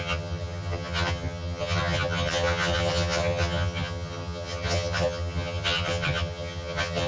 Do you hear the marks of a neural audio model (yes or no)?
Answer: yes